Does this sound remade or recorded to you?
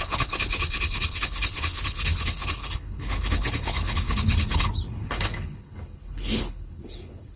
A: remade